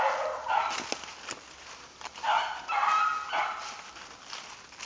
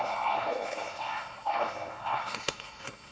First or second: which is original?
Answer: first